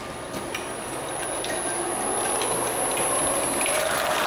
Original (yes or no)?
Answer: yes